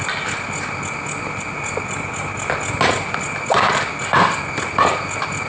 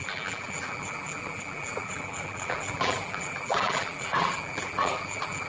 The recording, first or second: first